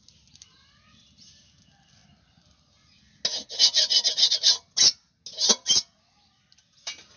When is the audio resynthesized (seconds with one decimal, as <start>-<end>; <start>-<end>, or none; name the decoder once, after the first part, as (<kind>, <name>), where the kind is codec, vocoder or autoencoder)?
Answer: none